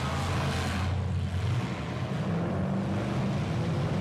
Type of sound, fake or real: real